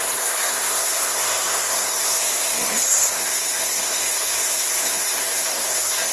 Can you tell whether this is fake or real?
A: fake